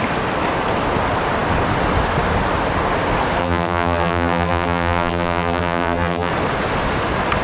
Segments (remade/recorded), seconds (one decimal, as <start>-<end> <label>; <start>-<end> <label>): 0.0-3.4 recorded; 3.4-6.3 remade; 6.3-7.4 recorded